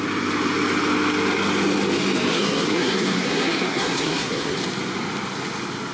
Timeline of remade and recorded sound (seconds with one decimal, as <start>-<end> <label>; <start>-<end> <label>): 0.0-2.3 recorded; 2.3-4.6 remade; 4.6-5.9 recorded